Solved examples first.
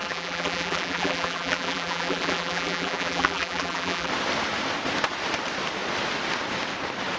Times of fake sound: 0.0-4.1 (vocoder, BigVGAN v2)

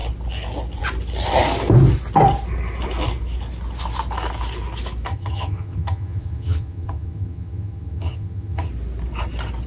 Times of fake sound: 5.1-8.7 (vocoder, HiFi-GAN)

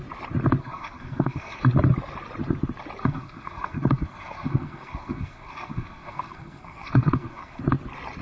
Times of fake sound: 0.6-1.6 (codec, SNAC); 3.0-7.6